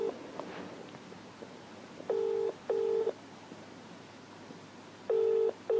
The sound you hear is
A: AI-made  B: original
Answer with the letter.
B